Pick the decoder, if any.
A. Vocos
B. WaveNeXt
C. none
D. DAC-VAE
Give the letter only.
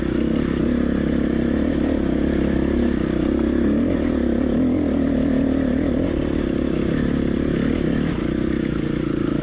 C